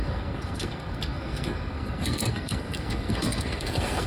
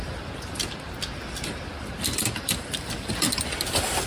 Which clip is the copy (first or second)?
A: first